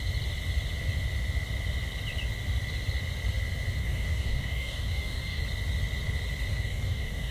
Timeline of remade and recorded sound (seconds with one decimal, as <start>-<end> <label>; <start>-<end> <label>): 0.0-3.8 recorded; 3.8-5.4 remade; 5.4-6.5 recorded; 6.5-7.3 remade